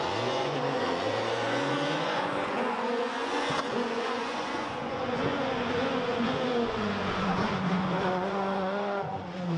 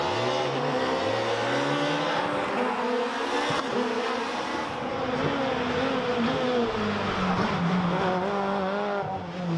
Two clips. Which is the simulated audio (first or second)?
first